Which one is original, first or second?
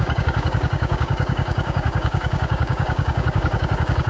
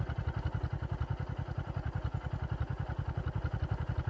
second